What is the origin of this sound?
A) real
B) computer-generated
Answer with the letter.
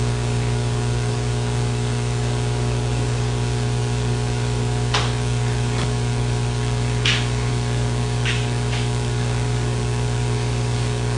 B